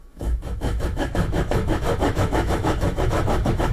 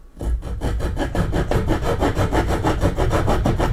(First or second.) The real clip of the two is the second